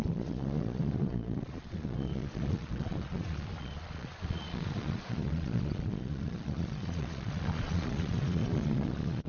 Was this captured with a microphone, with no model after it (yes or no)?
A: no